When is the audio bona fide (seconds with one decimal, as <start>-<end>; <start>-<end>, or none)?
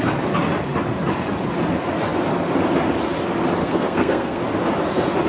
0.0-3.6; 4.4-5.3